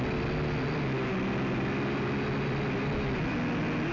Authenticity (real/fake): real